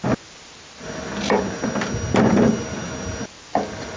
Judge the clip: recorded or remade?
recorded